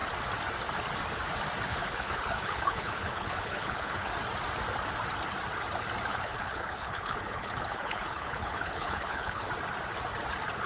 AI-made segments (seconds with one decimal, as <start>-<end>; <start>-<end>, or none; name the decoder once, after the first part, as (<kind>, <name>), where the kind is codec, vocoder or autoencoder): 1.7-4.1 (codec, HILCodec); 6.1-9.5